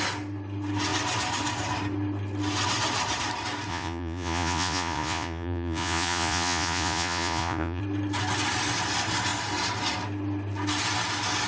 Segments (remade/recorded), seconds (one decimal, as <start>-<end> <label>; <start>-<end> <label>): 0.0-3.7 recorded; 3.7-7.8 remade; 7.8-11.5 recorded